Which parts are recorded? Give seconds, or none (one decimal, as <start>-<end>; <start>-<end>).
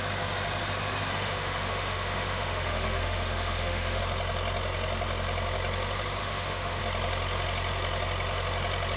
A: 0.0-1.1; 4.0-6.2; 6.8-9.0